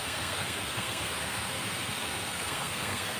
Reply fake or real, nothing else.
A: fake